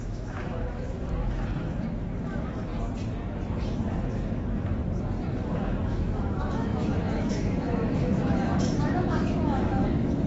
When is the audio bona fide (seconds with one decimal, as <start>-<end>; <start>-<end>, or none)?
2.7-3.5; 4.8-5.4